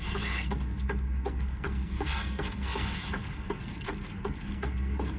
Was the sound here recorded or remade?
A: remade